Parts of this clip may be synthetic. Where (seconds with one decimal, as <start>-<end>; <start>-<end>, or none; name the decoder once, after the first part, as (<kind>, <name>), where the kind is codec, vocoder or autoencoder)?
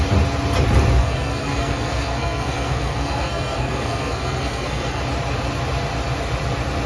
1.0-5.0 (codec, SNAC)